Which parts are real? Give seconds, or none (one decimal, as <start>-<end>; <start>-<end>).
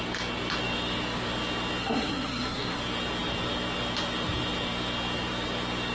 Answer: 0.0-1.8; 2.8-5.9